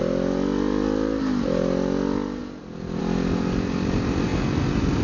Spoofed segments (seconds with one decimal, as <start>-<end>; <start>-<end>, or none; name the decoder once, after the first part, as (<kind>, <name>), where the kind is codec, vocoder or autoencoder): none